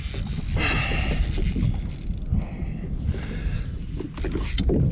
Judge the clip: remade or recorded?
recorded